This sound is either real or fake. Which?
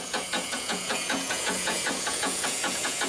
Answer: fake